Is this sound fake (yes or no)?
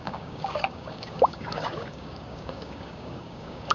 yes